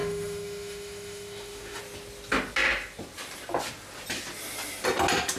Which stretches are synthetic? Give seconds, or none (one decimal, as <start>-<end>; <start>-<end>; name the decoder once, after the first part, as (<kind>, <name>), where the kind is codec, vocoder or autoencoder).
0.0-1.8 (autoencoder, DAC-VAE)